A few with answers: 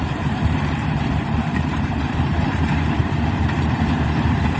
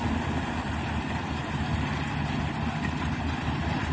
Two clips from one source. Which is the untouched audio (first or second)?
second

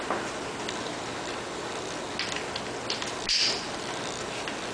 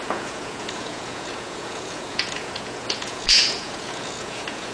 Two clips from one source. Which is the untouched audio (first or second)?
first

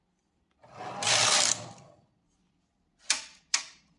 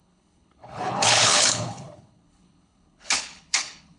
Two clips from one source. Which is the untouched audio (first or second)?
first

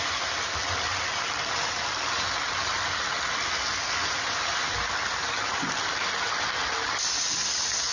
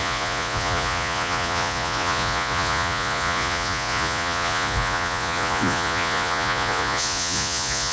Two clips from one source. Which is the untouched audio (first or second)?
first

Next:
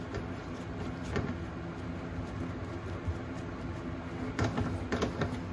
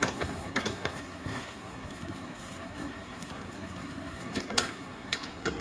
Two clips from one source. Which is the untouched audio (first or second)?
first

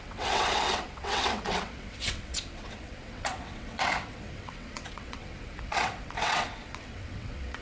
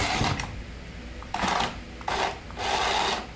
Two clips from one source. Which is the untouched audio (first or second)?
second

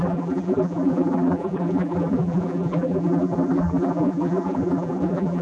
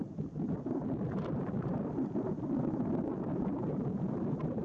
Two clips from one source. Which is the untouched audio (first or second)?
second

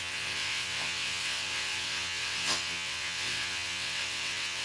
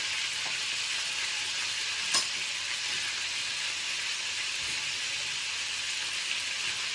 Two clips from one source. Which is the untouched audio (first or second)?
second